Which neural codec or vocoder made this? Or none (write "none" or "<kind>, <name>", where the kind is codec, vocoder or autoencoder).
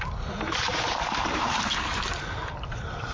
vocoder, BigVGAN v2